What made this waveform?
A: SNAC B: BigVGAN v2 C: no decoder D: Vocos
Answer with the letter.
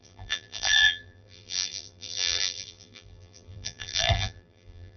B